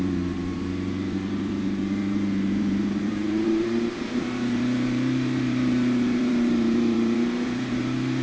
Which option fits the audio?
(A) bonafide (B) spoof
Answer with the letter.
B